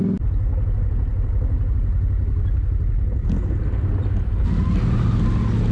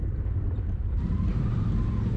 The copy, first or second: second